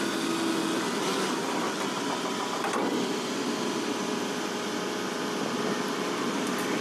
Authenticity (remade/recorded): recorded